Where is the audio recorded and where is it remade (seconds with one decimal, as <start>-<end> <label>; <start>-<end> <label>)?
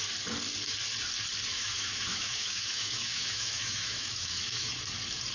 0.0-1.5 recorded; 1.5-4.7 remade; 4.7-5.3 recorded